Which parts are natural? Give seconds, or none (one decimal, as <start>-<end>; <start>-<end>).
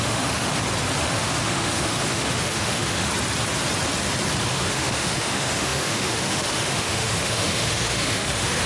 0.5-1.0; 3.1-4.5